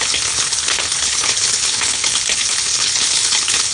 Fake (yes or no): yes